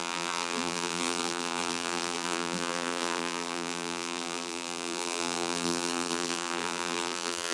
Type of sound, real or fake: fake